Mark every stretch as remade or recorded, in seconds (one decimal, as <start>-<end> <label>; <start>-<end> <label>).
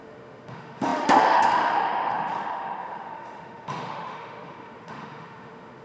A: 0.0-5.8 remade